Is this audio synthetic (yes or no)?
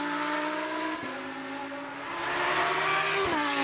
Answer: no